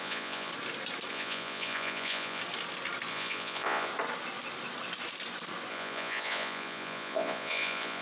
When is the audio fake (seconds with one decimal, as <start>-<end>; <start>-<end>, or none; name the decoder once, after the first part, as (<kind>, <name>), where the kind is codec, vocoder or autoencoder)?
0.0-0.5 (vocoder, Vocos); 1.1-2.4; 3.1-3.9; 5.7-8.0

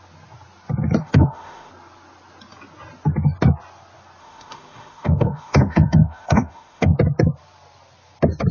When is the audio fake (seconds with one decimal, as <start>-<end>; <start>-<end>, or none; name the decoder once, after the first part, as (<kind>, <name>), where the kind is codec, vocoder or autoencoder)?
1.0-1.7 (autoencoder, DAC-VAE); 4.2-7.0

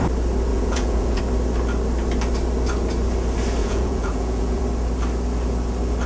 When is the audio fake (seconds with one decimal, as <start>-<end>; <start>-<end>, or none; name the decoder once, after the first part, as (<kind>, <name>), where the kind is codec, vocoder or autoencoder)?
0.5-1.2 (vocoder, Vocos); 3.6-4.6

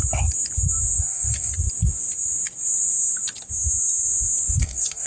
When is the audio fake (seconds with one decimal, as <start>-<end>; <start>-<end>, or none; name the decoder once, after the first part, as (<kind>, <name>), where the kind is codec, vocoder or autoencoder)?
1.0-1.5 (codec, DAC); 4.6-5.1